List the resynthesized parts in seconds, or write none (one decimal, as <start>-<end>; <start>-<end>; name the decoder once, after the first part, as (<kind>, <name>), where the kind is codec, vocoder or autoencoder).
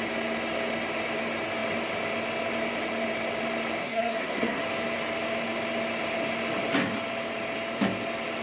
3.8-4.6 (codec, SNAC)